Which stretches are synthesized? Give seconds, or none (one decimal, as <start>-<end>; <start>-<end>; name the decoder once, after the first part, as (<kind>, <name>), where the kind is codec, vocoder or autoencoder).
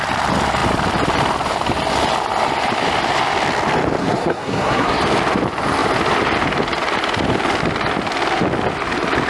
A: 4.0-5.0 (codec, SNAC)